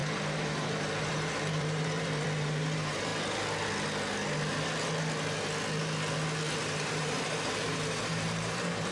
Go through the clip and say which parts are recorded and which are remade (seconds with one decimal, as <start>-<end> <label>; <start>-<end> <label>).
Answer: 0.0-3.1 remade; 3.1-6.6 recorded; 6.6-8.9 remade